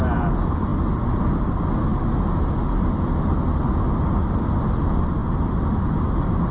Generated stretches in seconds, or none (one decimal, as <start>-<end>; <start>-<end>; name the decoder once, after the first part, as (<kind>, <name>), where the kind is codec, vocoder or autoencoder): none